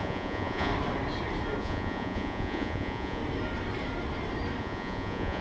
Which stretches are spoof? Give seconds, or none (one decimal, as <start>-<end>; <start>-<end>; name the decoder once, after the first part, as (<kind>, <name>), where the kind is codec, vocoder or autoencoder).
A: 0.0-0.7 (vocoder, Vocos); 1.6-3.2; 4.6-5.4